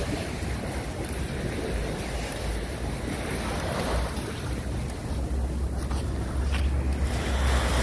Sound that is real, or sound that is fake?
real